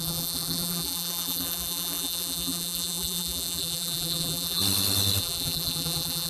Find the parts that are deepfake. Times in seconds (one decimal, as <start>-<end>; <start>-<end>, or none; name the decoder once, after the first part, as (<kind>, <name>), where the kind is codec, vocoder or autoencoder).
0.0-4.6 (vocoder, BigVGAN v2); 5.2-6.3